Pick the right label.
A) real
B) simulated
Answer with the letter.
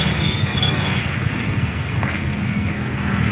B